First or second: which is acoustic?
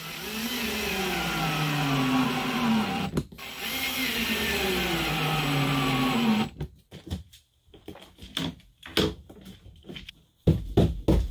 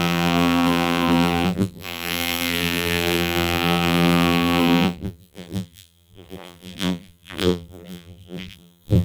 first